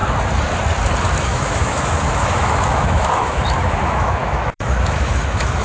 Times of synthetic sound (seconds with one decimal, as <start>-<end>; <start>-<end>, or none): 1.2-5.6